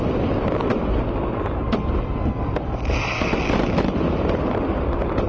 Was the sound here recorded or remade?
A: recorded